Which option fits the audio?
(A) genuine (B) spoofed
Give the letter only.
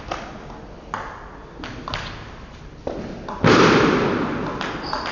A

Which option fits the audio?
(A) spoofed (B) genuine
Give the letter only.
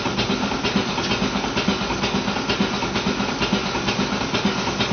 B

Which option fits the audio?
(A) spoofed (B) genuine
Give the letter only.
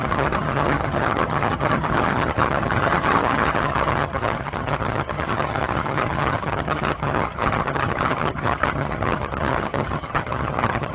A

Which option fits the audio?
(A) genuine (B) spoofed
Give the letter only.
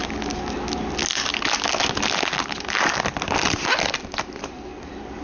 A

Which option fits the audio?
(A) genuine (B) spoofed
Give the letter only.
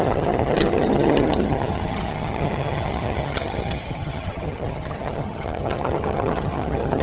B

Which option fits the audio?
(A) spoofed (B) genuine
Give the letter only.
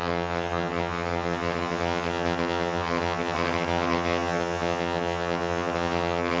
A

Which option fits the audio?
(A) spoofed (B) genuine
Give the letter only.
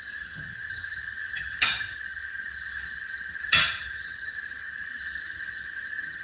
A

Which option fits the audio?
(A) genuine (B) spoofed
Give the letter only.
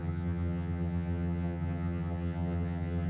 B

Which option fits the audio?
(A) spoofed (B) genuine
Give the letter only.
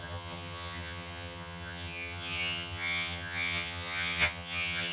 A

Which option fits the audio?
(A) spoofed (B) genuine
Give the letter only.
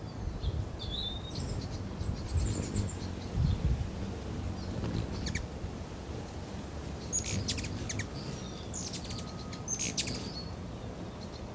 B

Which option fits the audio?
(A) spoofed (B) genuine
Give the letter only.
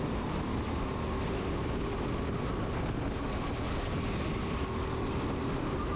B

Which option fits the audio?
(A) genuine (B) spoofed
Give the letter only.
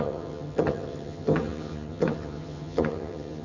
B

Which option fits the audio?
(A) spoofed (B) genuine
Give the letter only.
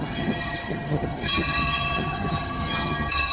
A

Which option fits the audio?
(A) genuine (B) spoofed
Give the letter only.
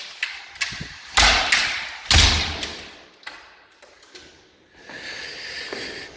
A